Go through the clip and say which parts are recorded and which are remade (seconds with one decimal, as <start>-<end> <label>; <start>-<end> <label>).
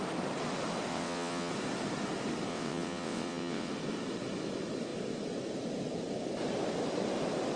0.0-0.9 recorded; 0.9-1.5 remade; 1.5-2.5 recorded; 2.5-3.7 remade; 3.7-7.6 recorded